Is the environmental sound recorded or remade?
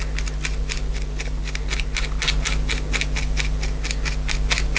recorded